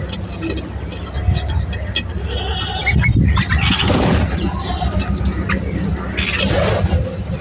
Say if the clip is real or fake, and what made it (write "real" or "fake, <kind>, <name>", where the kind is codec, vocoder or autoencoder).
real